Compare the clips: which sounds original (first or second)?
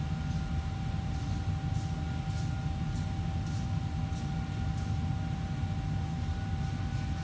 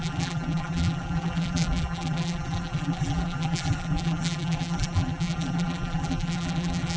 first